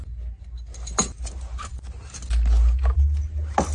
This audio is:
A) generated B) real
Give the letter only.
B